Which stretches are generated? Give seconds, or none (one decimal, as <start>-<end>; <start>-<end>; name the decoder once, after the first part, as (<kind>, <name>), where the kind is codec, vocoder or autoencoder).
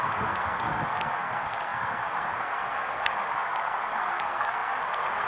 0.0-5.3 (codec, SNAC)